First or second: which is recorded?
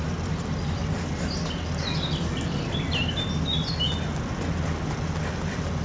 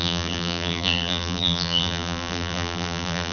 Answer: first